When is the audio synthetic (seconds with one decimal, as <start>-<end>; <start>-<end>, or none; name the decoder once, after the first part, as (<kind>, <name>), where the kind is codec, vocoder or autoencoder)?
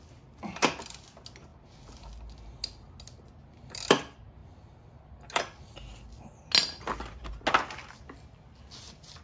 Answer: none